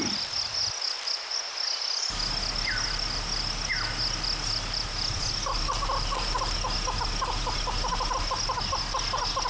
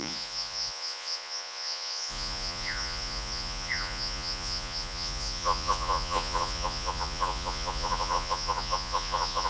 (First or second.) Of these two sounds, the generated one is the second